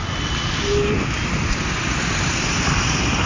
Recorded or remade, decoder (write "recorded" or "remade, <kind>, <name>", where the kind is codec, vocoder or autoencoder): recorded